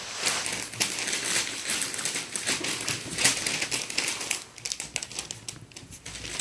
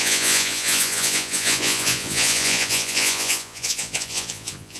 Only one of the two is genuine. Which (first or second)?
first